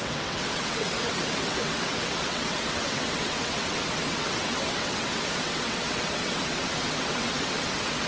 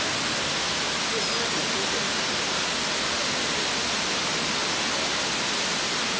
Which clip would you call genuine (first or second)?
second